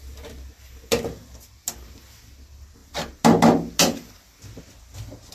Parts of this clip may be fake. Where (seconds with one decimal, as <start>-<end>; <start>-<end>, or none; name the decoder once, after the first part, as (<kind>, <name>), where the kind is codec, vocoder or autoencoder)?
none